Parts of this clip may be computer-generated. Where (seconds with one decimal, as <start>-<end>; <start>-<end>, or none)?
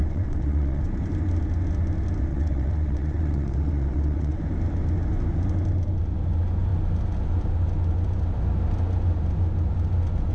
0.0-0.8; 2.3-4.4